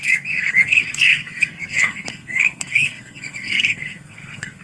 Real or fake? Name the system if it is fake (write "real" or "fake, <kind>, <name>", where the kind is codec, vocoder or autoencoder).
fake, codec, SNAC